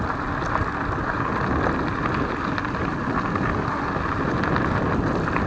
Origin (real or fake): real